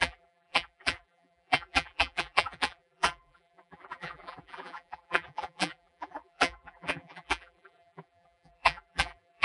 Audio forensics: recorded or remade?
remade